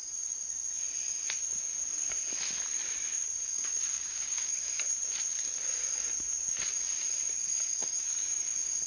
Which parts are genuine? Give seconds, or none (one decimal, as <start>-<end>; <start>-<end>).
0.0-3.7; 4.5-8.9